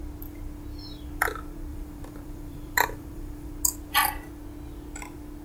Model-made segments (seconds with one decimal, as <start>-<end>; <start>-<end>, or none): 1.7-3.5